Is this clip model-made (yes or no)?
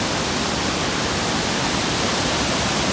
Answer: no